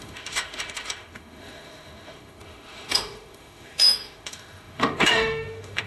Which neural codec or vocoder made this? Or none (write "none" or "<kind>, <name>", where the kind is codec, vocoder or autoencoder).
autoencoder, DAC-VAE